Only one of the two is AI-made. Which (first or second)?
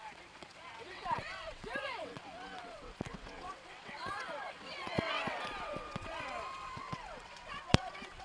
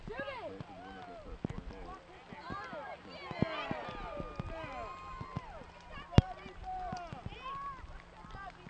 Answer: first